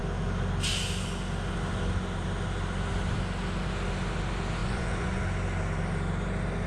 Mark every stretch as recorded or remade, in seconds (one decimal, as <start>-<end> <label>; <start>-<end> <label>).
0.0-4.6 recorded; 4.6-5.2 remade; 5.2-6.7 recorded